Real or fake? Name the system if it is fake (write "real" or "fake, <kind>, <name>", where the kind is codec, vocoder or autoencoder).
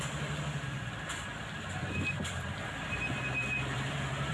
fake, vocoder, BigVGAN v2